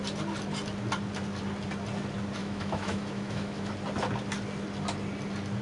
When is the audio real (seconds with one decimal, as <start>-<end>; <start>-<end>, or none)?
0.0-2.4; 3.7-5.6